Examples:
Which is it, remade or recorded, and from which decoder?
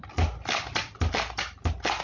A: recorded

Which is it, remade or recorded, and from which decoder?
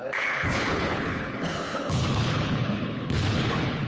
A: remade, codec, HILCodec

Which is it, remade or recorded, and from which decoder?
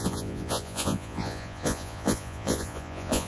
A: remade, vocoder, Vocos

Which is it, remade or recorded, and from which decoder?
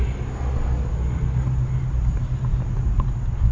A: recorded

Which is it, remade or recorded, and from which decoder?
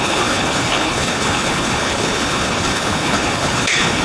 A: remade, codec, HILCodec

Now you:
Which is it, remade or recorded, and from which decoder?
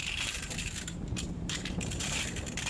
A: remade, vocoder, BigVGAN v2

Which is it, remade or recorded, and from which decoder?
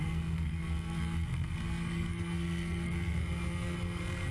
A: remade, codec, SNAC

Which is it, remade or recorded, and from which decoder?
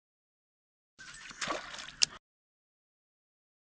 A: recorded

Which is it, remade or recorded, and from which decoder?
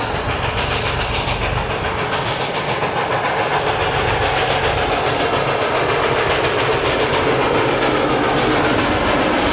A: recorded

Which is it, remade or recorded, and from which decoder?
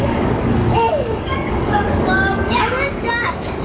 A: remade, codec, DAC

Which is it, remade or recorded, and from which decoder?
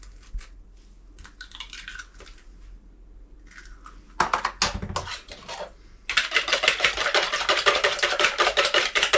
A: recorded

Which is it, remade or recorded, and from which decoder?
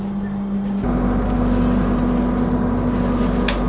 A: recorded